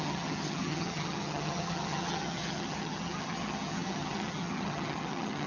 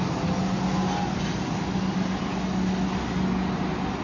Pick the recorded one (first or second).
second